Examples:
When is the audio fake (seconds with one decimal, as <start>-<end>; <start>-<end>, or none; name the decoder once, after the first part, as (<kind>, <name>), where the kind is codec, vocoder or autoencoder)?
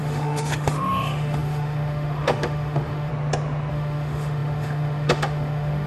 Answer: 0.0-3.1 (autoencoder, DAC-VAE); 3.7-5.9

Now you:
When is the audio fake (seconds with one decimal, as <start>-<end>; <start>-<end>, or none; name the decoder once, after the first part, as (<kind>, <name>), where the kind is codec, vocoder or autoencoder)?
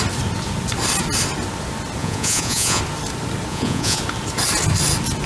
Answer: 2.0-2.8 (vocoder, Vocos); 3.5-4.0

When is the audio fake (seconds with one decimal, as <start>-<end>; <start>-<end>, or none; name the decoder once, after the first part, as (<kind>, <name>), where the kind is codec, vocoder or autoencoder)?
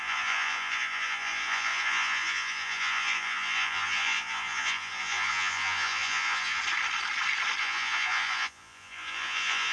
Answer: 0.0-6.6 (vocoder, Vocos); 7.6-9.7